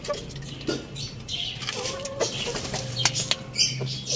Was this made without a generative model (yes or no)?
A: yes